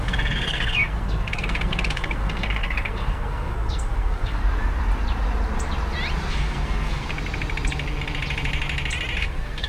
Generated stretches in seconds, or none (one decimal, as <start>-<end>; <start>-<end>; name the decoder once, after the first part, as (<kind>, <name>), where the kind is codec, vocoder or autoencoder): 0.0-4.4 (codec, SNAC); 6.3-7.1; 9.2-9.7